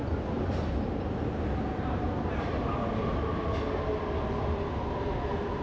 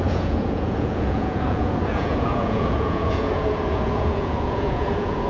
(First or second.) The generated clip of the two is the second